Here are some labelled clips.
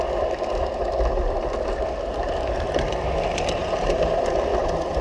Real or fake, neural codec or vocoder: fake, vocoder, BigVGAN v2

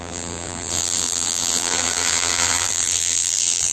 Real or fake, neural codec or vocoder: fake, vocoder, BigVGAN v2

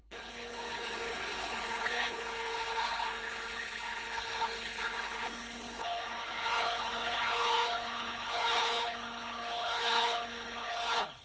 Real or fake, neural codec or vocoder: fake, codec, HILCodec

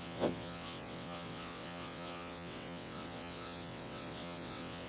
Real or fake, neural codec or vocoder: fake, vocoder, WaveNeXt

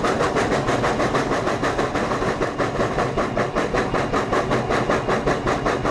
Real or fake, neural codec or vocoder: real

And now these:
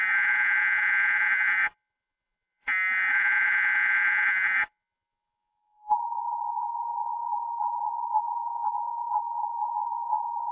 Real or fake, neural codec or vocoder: fake, vocoder, Vocos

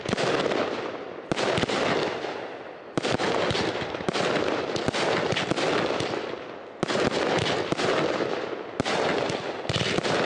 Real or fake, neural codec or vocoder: real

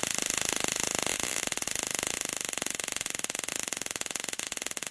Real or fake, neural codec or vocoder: real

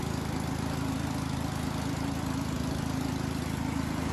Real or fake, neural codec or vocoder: real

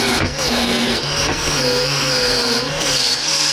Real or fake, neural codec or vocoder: fake, codec, SNAC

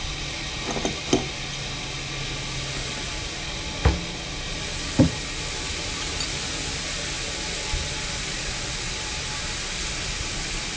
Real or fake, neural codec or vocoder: real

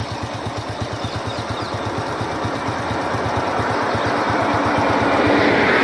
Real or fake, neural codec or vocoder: real